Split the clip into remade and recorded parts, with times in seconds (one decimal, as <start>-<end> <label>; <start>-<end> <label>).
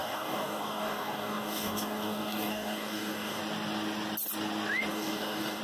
0.0-3.4 remade; 3.4-4.9 recorded; 4.9-5.6 remade